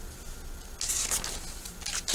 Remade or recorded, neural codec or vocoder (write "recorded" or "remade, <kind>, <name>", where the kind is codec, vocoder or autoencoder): recorded